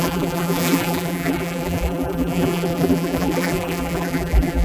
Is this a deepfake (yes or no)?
yes